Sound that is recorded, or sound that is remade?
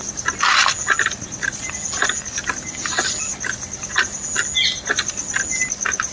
recorded